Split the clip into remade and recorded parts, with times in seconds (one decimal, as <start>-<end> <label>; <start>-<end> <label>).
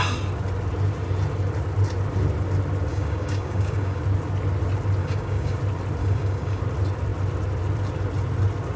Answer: 0.0-2.9 recorded; 2.9-4.0 remade; 4.0-5.0 recorded; 5.0-5.6 remade; 5.6-6.0 recorded; 6.0-6.6 remade; 6.6-8.8 recorded